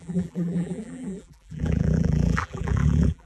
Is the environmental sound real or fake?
fake